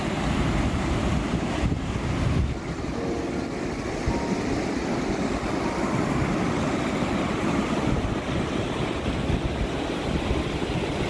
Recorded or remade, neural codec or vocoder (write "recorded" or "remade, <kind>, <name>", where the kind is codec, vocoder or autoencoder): recorded